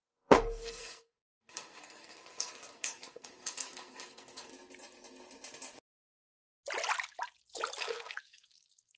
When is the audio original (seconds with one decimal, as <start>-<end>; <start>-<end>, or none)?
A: 4.5-7.8